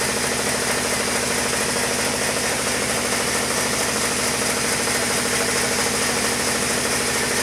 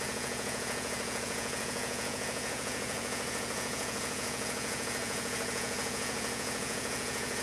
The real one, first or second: first